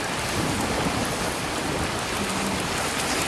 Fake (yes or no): no